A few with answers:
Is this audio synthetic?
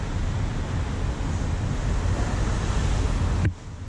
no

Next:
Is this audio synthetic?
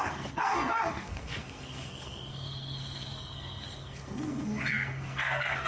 yes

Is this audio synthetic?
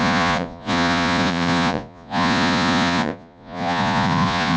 yes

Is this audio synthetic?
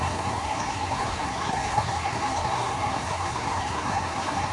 yes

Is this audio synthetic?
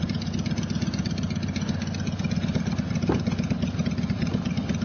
no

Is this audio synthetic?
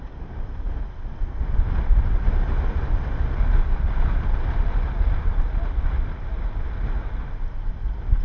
no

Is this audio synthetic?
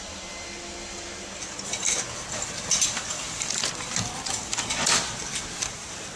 no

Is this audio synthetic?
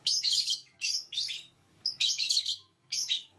yes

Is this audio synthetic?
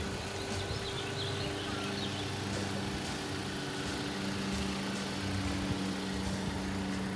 no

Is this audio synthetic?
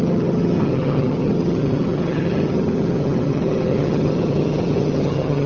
yes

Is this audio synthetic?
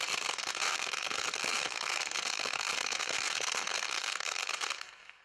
yes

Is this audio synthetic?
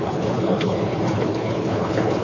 yes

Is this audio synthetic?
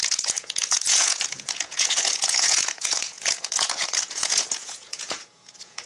yes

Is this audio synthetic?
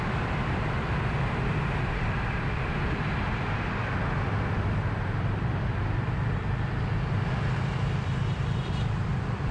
yes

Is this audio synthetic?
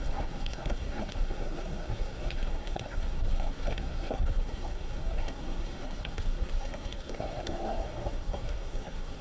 yes